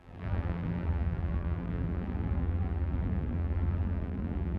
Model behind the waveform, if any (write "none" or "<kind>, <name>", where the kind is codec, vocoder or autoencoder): vocoder, BigVGAN v2